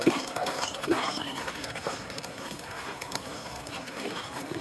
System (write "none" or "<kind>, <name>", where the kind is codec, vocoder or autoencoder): codec, SNAC